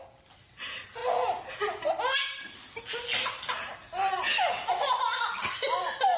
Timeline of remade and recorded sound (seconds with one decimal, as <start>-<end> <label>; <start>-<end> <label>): 0.0-6.2 recorded